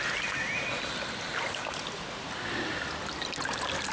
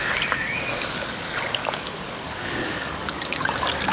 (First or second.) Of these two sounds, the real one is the first